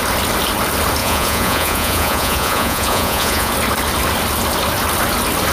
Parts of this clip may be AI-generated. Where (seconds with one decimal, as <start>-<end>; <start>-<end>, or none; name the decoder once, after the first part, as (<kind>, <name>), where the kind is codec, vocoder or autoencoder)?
1.0-3.5 (vocoder, Vocos)